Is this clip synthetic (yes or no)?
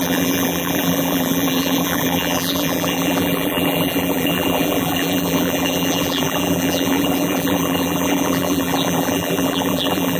yes